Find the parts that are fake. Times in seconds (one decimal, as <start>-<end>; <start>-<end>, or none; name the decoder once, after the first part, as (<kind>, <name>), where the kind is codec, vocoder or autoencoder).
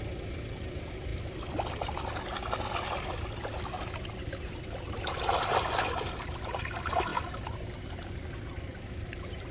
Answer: 7.1-9.5 (vocoder, BigVGAN v2)